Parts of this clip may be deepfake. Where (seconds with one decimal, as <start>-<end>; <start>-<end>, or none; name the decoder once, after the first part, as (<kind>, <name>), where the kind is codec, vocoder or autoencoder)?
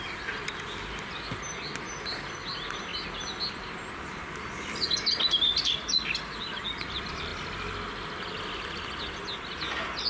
none